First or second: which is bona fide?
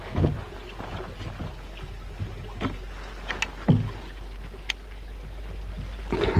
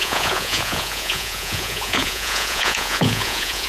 first